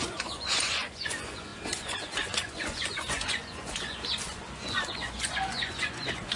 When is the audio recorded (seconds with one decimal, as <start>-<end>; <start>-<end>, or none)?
none